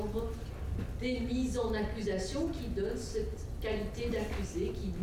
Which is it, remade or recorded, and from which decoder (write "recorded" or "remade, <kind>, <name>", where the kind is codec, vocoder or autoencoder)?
recorded